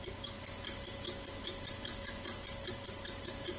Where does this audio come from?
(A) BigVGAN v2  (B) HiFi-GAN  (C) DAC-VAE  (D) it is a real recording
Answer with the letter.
D